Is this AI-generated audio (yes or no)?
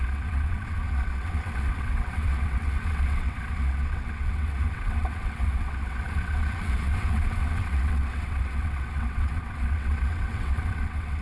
yes